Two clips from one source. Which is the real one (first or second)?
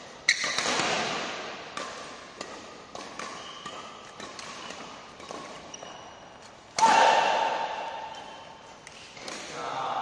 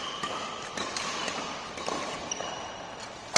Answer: first